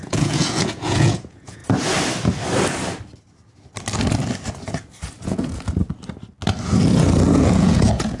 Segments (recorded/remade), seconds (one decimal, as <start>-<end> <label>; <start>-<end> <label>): 0.0-1.6 remade; 1.6-5.2 recorded; 5.2-5.8 remade; 5.8-7.3 recorded; 7.3-8.2 remade